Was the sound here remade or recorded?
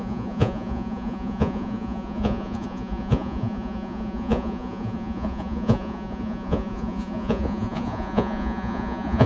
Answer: remade